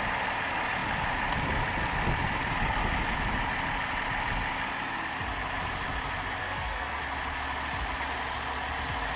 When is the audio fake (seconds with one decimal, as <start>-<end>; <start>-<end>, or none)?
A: 6.4-7.0